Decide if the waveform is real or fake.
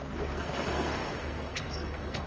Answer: fake